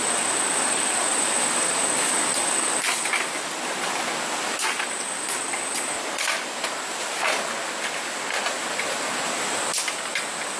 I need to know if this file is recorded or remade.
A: recorded